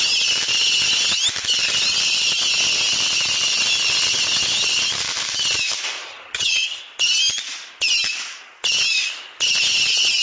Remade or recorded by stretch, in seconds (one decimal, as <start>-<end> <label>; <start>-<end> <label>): 0.0-6.1 recorded; 6.1-6.8 remade; 6.8-10.2 recorded